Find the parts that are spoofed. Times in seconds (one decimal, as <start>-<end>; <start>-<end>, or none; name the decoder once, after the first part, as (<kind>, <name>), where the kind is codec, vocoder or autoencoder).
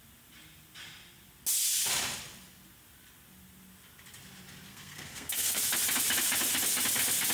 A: 4.7-5.6 (codec, SNAC)